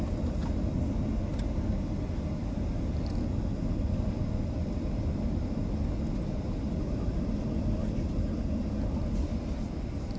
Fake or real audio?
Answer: real